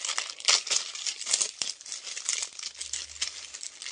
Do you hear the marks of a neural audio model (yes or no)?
no